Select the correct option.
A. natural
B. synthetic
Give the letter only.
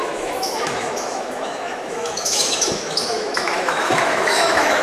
B